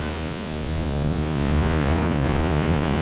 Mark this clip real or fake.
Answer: fake